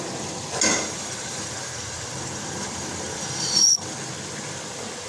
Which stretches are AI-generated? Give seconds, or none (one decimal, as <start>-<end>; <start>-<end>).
0.7-3.8